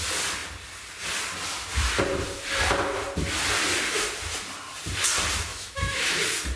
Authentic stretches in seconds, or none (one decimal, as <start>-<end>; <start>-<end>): 0.0-5.5; 6.1-6.6